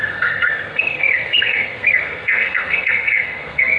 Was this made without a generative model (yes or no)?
no